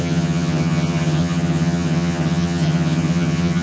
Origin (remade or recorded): remade